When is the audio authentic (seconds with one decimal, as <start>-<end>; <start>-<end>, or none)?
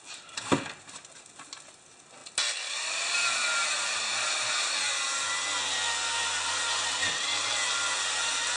0.0-8.6